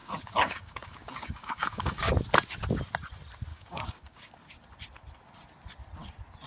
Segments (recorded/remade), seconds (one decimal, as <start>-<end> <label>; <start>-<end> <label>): 0.0-2.1 remade; 2.1-3.5 recorded; 3.5-4.3 remade; 4.3-6.5 recorded